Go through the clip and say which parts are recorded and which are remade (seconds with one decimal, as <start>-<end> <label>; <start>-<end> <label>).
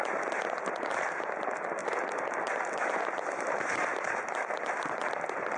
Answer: 0.0-5.6 remade